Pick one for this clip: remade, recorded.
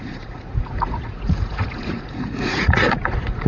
remade